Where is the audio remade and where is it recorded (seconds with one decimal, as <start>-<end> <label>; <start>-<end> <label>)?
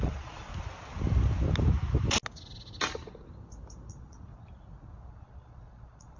0.0-0.5 remade; 0.5-3.9 recorded; 3.9-4.3 remade; 4.3-5.1 recorded; 5.1-6.2 remade